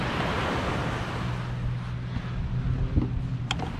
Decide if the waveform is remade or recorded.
recorded